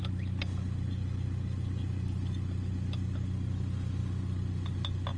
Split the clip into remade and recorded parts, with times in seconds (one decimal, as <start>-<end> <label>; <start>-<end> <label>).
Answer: 0.0-5.2 recorded

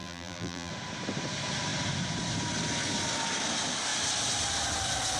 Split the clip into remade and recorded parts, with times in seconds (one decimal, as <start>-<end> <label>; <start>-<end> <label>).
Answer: 0.0-0.7 remade; 0.7-5.2 recorded

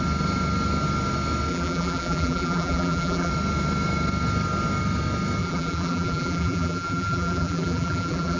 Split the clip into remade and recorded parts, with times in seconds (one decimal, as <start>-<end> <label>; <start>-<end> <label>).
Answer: 0.0-1.5 recorded; 1.5-3.3 remade; 3.3-5.4 recorded; 5.4-8.4 remade